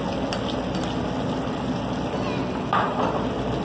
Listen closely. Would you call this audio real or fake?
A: real